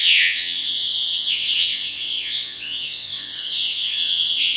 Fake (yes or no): yes